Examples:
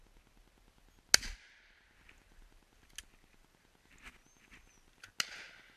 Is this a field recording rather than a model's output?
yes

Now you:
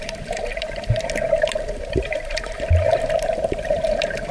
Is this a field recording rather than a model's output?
no